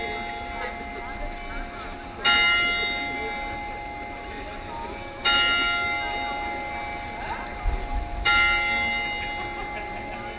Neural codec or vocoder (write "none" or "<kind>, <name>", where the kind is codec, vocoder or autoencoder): none